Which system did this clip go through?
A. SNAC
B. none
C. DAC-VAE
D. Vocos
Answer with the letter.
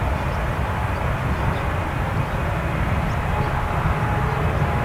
B